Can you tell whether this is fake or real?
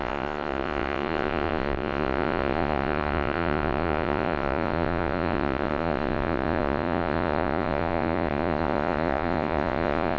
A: fake